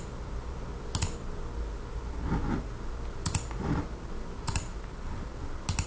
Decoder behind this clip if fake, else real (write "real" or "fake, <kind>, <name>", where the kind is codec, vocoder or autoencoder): real